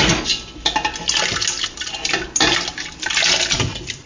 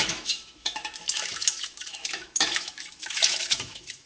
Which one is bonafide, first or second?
first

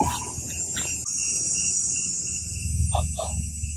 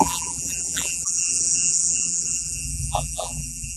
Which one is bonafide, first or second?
first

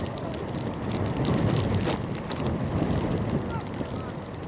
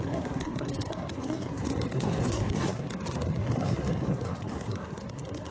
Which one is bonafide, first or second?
first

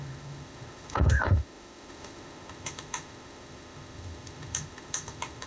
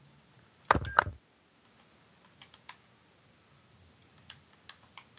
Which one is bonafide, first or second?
second